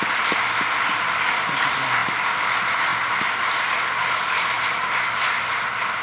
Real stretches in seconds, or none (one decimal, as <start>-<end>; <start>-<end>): 0.0-6.0